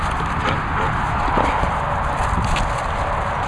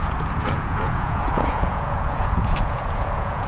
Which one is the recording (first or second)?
first